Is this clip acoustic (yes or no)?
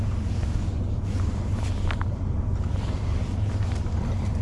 no